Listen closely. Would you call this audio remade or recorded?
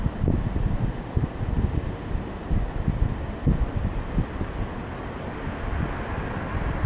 recorded